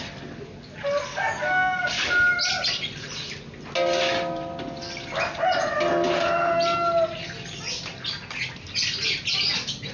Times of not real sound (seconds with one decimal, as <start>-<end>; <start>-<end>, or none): 1.1-2.1